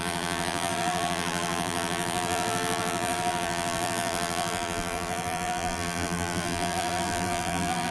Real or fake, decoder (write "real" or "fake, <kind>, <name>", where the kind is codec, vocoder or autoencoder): fake, vocoder, BigVGAN v2